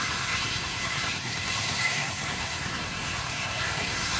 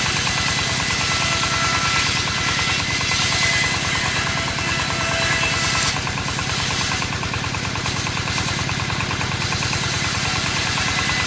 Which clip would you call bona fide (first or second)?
second